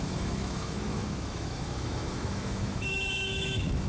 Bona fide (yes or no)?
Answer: no